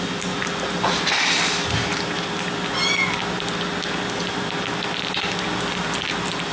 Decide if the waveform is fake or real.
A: real